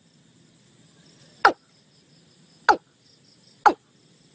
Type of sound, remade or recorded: recorded